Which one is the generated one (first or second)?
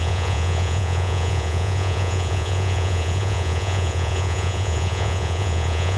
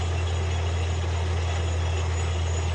first